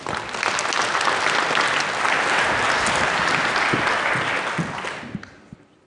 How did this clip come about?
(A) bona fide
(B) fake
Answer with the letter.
A